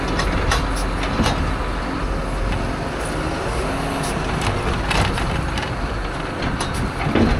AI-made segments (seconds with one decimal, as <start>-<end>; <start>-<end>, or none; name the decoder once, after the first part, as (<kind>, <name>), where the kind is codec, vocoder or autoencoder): none